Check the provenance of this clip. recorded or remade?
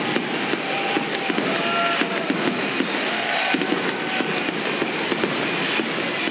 recorded